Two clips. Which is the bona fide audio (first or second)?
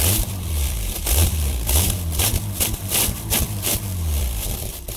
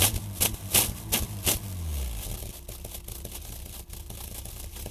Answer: second